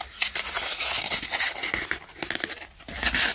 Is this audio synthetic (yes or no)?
no